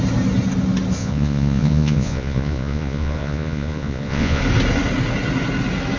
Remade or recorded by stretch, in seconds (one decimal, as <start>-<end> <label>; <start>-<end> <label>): 0.0-1.0 recorded; 1.0-4.4 remade; 4.4-6.0 recorded